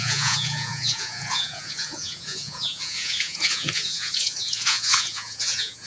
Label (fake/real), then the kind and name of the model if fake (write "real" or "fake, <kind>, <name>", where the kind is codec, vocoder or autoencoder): fake, vocoder, Vocos